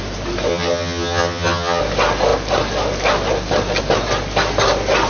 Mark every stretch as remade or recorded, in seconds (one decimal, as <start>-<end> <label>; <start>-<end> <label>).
0.0-0.5 recorded; 0.5-1.8 remade; 1.8-5.1 recorded